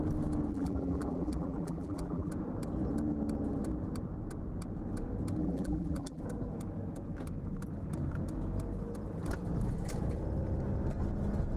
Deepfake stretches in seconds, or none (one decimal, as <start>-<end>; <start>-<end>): 0.5-2.3; 5.4-6.2